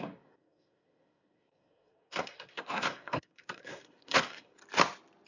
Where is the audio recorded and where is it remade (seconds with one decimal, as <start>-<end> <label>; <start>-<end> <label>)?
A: 0.0-4.6 remade; 4.6-5.3 recorded

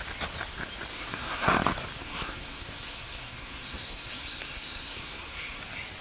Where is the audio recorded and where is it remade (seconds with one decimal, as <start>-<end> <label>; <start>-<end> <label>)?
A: 0.0-0.9 recorded; 0.9-1.5 remade; 1.5-2.0 recorded; 2.0-5.6 remade; 5.6-6.0 recorded

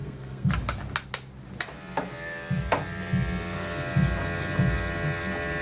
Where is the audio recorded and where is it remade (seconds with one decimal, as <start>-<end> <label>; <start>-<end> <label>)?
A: 0.0-0.5 remade; 0.5-5.6 recorded

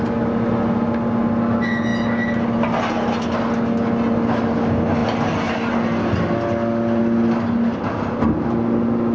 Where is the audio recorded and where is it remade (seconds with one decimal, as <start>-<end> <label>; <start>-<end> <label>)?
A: 0.0-9.1 recorded